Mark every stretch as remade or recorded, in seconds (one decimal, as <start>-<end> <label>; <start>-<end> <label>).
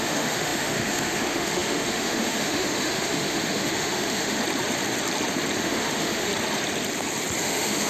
0.0-4.4 remade; 4.4-5.6 recorded; 5.6-6.3 remade; 6.3-7.4 recorded; 7.4-7.9 remade